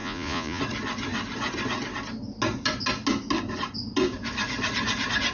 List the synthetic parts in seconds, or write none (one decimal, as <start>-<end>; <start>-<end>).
0.0-0.6